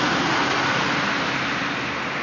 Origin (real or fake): real